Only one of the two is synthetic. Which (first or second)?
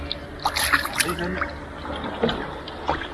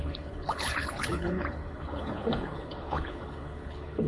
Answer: second